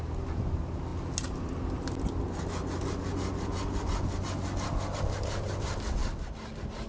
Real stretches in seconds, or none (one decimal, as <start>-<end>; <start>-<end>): 0.0-6.9